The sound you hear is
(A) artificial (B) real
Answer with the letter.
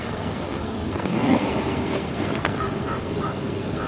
A